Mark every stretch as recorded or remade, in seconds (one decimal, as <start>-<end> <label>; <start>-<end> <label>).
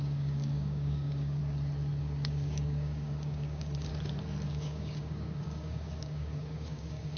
0.0-1.4 remade; 1.4-2.0 recorded; 2.0-3.9 remade; 3.9-4.5 recorded; 4.5-7.2 remade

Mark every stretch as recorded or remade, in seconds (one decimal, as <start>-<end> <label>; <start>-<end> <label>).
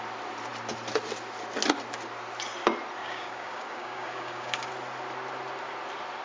0.0-3.0 recorded; 3.0-4.7 remade; 4.7-6.2 recorded